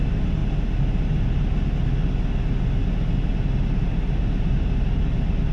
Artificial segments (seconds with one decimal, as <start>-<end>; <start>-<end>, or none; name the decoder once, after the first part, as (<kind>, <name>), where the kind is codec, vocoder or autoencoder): 0.0-0.4 (vocoder, BigVGAN v2); 3.7-5.5